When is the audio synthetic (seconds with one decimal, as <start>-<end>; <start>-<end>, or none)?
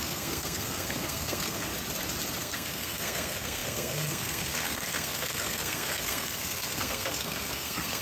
0.0-1.7; 2.4-8.0